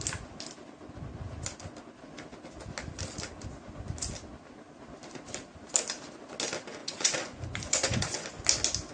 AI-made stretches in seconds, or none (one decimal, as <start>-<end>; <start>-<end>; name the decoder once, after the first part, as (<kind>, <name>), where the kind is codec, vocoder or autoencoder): 6.8-8.4 (vocoder, Vocos)